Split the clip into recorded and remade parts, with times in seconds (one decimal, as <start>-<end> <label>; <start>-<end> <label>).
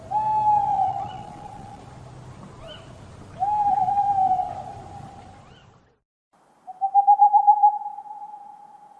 0.0-0.7 recorded; 0.7-1.8 remade; 1.8-9.0 recorded